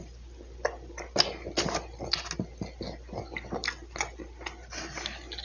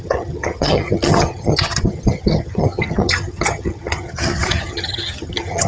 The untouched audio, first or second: first